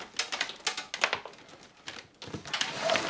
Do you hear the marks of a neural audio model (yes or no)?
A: no